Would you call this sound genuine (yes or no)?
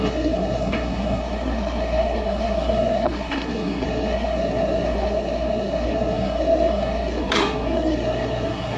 no